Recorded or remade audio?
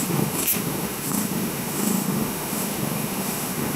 remade